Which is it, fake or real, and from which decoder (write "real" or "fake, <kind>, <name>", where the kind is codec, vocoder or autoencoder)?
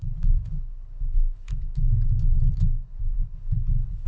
fake, codec, HILCodec